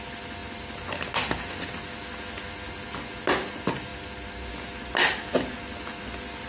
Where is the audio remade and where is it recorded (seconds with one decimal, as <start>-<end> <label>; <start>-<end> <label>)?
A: 0.0-6.5 recorded

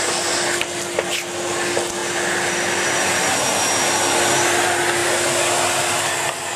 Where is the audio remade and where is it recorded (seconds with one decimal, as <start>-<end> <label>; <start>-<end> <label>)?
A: 0.0-6.6 recorded